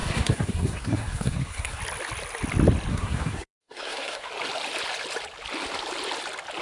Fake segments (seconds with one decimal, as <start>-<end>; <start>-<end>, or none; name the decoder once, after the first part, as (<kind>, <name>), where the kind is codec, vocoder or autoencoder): 0.0-1.8 (codec, SNAC); 2.9-4.3